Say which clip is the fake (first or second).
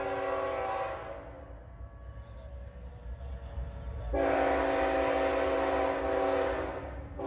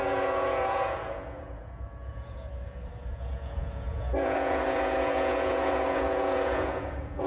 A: second